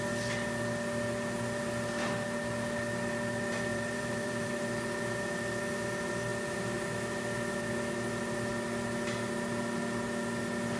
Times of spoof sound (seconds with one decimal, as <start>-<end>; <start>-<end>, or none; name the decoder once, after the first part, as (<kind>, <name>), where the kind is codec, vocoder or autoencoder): 3.7-4.6 (vocoder, BigVGAN v2)